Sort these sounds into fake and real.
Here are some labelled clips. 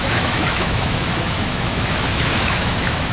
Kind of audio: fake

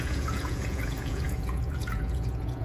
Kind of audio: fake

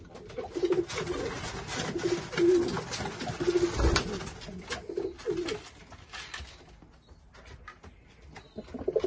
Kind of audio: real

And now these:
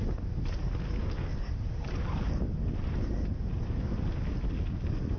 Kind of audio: real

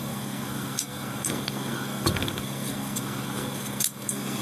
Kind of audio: fake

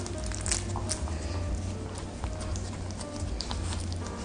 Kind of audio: real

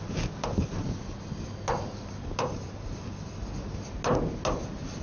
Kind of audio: real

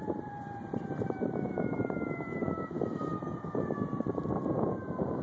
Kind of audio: fake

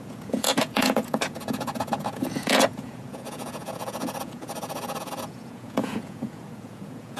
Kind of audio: fake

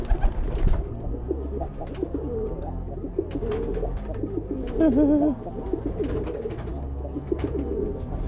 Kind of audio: real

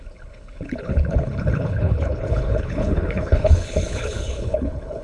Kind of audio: fake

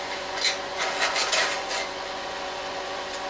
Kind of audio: fake